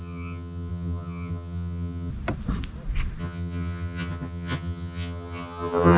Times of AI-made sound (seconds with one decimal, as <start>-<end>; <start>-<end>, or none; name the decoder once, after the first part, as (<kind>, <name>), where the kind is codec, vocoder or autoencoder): 0.0-2.1 (vocoder, HiFi-GAN); 3.2-6.0